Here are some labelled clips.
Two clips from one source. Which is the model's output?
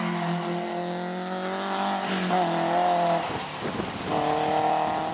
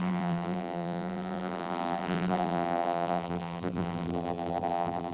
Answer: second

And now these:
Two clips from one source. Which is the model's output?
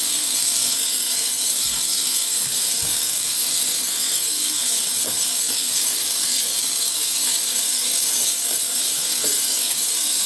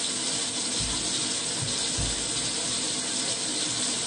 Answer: first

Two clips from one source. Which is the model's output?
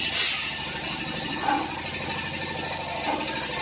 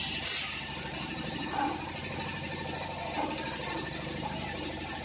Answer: second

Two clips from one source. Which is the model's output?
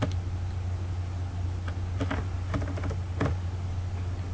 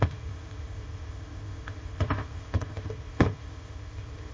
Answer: second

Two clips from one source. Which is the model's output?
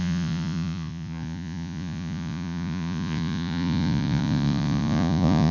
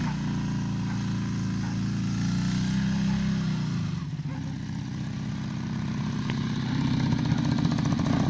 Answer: first